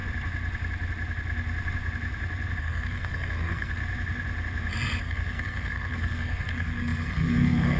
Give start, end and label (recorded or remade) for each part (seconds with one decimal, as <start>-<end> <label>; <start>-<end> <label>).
0.0-2.6 recorded; 2.6-3.8 remade; 3.8-5.0 recorded; 5.0-7.8 remade